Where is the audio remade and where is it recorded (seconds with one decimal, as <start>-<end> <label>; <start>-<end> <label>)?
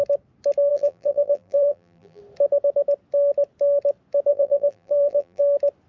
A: 0.0-0.7 recorded; 0.7-2.2 remade; 2.2-4.3 recorded; 4.3-5.4 remade; 5.4-5.9 recorded